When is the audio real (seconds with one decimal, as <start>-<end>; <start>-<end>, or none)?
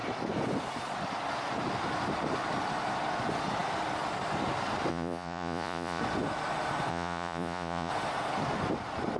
0.0-4.9; 6.0-6.9; 7.9-9.2